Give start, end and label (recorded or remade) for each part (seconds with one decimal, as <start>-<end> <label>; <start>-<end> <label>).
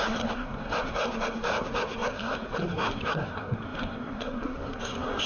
0.0-5.3 remade